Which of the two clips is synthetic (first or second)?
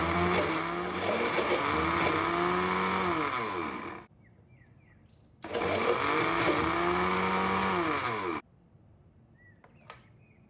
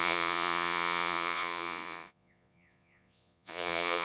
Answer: second